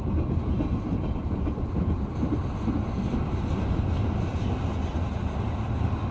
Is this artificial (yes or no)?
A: no